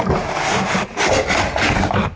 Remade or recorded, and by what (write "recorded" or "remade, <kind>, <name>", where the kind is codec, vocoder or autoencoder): recorded